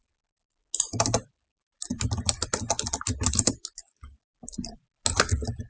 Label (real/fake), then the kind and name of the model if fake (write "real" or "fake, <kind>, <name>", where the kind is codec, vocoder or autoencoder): real